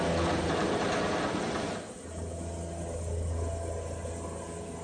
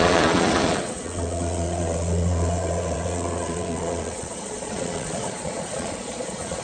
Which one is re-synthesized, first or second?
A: second